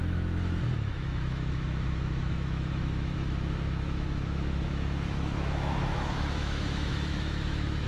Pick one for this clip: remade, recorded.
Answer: remade